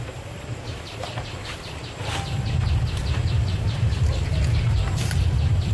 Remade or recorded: remade